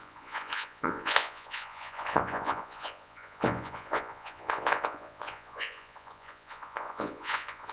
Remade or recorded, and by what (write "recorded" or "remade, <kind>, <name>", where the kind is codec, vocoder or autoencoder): remade, vocoder, Vocos